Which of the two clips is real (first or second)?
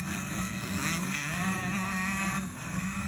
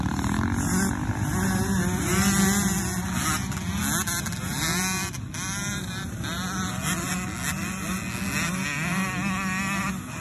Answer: second